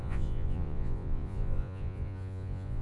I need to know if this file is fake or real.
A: fake